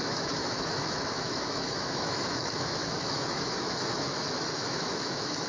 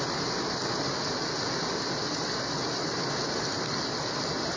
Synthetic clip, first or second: first